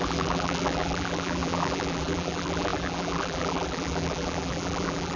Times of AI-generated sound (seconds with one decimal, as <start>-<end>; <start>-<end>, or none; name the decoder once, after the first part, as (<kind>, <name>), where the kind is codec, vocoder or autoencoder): 0.0-5.2 (vocoder, BigVGAN v2)